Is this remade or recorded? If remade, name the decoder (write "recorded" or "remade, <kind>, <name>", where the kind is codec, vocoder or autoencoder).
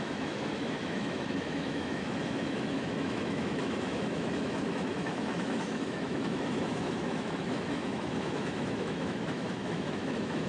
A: remade, autoencoder, DAC-VAE